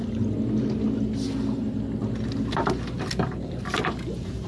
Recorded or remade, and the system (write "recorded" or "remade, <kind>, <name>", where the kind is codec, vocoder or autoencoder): recorded